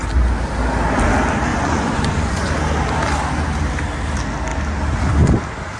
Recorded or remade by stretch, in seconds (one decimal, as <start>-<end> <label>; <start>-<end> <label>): 0.0-1.5 recorded; 1.5-2.5 remade; 2.5-5.8 recorded